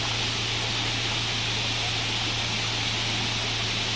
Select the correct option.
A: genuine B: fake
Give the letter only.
A